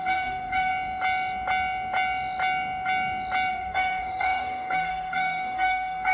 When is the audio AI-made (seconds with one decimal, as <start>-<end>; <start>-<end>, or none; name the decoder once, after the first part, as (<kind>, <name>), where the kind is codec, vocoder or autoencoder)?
0.0-0.7 (codec, SNAC); 3.5-6.1